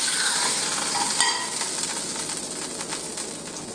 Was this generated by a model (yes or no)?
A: no